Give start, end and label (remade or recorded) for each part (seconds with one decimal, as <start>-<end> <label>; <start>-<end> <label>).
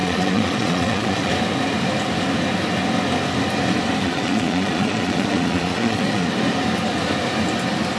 0.0-1.3 remade; 1.3-4.0 recorded; 4.0-6.3 remade; 6.3-8.0 recorded